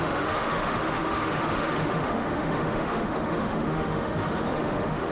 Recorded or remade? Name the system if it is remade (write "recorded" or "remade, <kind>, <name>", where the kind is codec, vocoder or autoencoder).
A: remade, autoencoder, DAC-VAE